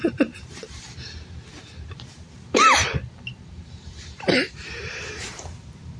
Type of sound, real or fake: fake